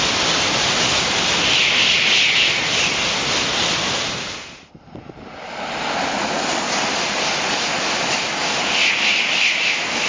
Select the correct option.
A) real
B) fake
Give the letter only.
A